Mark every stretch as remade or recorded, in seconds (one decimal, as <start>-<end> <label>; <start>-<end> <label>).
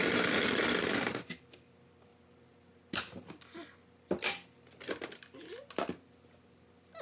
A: 0.0-0.6 remade; 0.6-7.0 recorded